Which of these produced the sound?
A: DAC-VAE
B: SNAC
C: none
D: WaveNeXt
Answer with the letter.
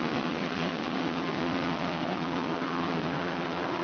D